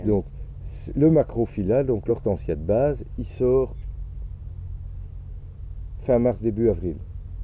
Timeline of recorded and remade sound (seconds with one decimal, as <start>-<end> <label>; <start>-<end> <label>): 0.0-7.4 recorded